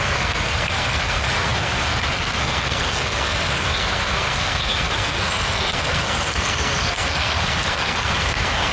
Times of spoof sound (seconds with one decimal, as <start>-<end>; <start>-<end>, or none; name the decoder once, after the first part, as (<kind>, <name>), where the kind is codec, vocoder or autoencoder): 0.0-8.7 (codec, SNAC)